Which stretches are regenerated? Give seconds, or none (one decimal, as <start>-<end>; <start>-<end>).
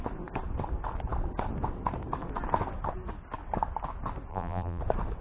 4.3-4.8